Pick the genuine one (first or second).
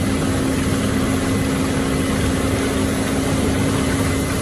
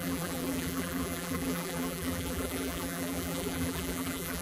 first